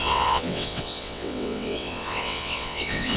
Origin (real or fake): fake